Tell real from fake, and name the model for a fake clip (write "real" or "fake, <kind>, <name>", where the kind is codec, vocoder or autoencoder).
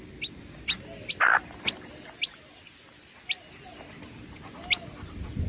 real